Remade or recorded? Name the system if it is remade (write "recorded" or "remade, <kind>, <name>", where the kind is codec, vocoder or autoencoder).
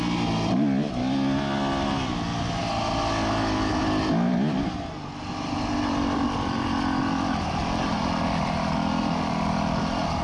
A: recorded